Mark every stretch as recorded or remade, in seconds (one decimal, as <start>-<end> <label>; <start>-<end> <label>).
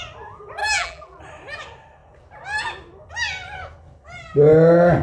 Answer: 0.0-0.6 recorded; 0.6-1.2 remade; 1.2-5.0 recorded